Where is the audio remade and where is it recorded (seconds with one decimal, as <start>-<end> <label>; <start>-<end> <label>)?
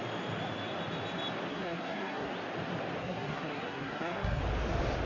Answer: 0.0-1.5 recorded; 1.5-2.3 remade; 2.3-3.0 recorded; 3.0-4.4 remade; 4.4-5.1 recorded